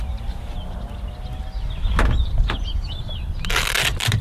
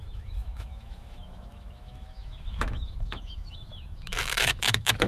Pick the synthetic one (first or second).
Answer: second